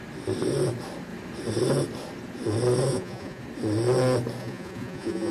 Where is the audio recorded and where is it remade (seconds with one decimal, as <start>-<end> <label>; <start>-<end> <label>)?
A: 0.0-2.9 recorded; 2.9-3.4 remade; 3.4-4.4 recorded; 4.4-5.3 remade